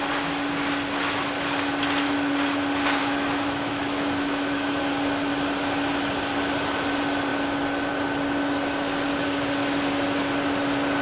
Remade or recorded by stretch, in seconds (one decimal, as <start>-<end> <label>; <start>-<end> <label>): 0.0-3.0 recorded; 3.0-4.8 remade; 4.8-11.0 recorded

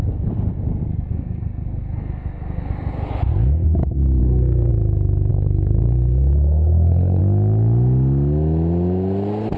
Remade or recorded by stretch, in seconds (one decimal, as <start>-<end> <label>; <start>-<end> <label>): 0.0-0.9 recorded; 0.9-2.7 remade; 2.7-4.2 recorded; 4.2-4.7 remade; 4.7-5.3 recorded; 5.3-7.2 remade; 7.2-9.6 recorded

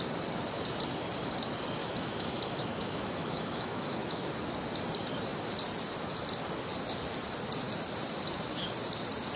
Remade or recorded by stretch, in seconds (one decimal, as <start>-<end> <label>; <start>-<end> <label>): 0.0-1.8 recorded; 1.8-4.3 remade; 4.3-9.4 recorded

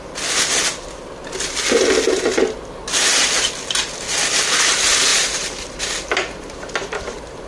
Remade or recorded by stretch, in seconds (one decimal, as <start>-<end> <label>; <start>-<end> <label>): 0.0-5.1 recorded; 5.1-7.5 remade